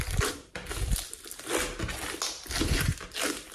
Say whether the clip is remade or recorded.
recorded